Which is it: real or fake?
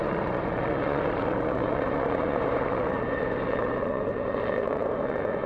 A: fake